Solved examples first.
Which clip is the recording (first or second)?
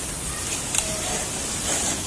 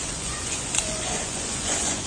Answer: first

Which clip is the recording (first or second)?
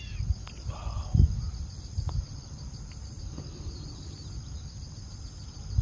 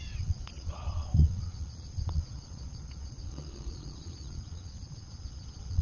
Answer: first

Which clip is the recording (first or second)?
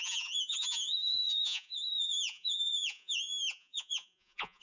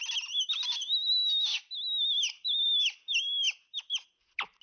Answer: second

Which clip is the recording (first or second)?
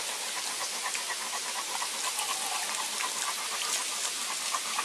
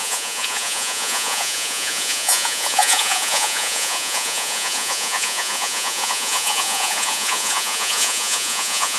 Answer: first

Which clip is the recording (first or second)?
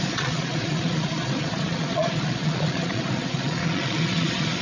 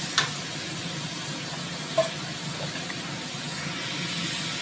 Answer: second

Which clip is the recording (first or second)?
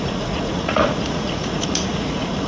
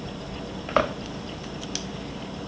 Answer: second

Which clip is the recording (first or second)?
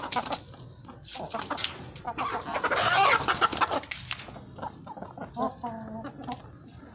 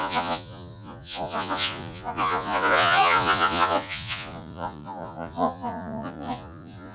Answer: first